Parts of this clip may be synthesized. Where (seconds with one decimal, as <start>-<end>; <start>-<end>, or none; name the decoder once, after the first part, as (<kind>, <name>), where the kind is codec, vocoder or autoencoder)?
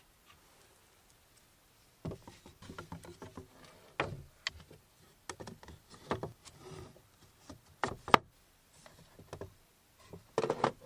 1.6-2.6 (vocoder, BigVGAN v2); 6.6-10.4